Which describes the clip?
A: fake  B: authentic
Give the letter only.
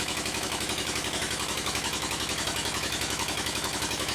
A